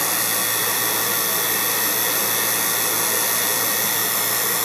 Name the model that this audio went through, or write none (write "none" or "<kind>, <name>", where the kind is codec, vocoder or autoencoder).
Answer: none